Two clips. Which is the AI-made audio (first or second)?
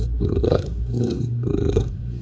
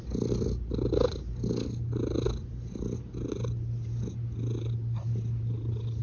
first